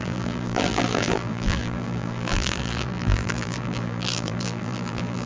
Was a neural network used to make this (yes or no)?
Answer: yes